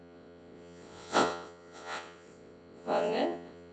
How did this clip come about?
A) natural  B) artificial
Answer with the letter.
B